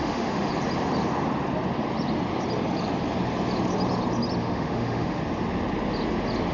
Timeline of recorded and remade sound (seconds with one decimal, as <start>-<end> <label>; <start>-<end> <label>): 0.0-0.5 remade; 0.5-4.4 recorded; 4.4-5.2 remade; 5.2-6.5 recorded